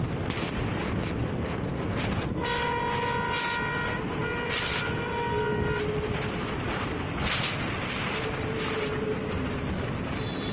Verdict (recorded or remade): recorded